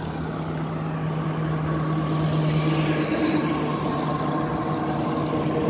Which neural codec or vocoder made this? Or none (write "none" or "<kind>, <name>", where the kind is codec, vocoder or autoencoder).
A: none